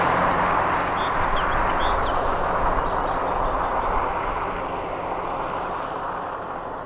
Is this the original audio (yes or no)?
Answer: yes